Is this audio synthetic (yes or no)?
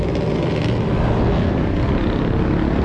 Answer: no